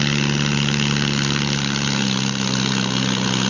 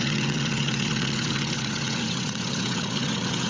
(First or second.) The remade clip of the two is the second